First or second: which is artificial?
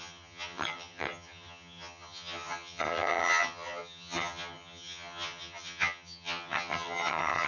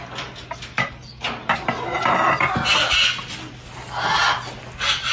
first